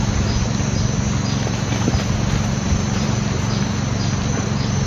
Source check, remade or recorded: recorded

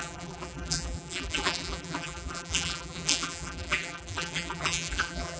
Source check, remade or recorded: remade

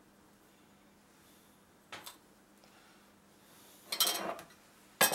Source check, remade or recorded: recorded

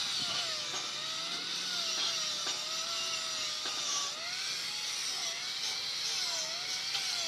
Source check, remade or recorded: recorded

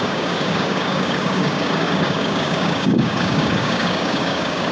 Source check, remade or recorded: remade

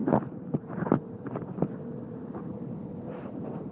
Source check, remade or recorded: remade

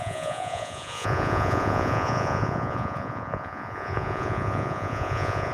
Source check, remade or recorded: remade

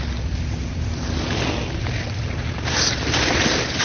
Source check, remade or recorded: recorded